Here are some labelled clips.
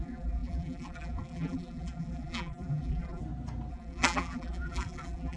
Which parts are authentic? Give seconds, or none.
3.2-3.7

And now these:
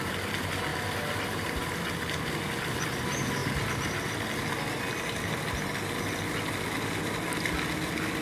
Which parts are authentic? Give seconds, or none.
0.0-0.7; 2.8-8.2

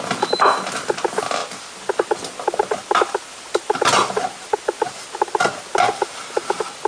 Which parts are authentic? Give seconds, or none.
0.0-6.9

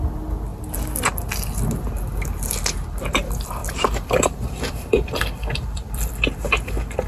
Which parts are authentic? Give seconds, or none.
0.0-3.6; 6.1-7.1